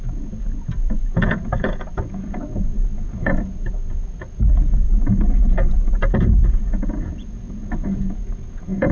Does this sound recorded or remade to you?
remade